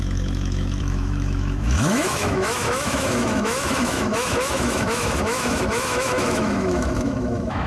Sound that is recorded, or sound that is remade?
remade